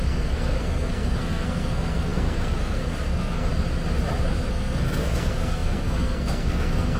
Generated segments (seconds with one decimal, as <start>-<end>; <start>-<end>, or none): 0.0-3.5; 4.5-7.0